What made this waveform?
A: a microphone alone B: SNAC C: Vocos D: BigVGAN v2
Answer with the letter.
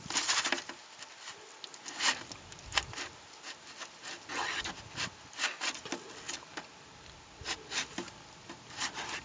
A